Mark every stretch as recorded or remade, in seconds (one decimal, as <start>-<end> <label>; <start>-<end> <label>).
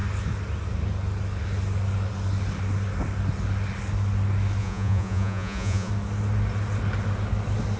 0.0-4.6 recorded; 4.6-5.9 remade; 5.9-7.8 recorded